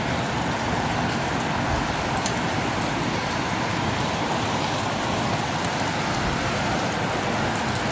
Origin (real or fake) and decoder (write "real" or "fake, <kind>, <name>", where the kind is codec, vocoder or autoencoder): real